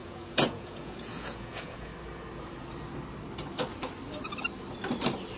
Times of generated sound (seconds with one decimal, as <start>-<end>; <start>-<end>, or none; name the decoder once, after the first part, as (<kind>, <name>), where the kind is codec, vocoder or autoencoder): 0.0-1.9 (vocoder, Vocos)